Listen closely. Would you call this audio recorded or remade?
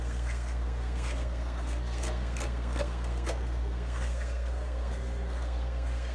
remade